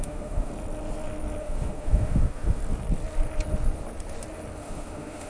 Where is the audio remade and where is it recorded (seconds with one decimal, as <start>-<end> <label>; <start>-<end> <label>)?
0.0-0.5 remade; 0.5-1.4 recorded; 1.4-2.6 remade; 2.6-4.6 recorded; 4.6-5.3 remade